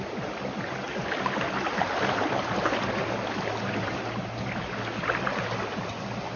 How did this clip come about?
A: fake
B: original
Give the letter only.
B